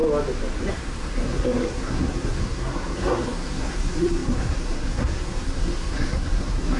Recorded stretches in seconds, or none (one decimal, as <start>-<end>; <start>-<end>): 0.0-0.7